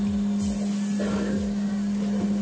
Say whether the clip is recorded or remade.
recorded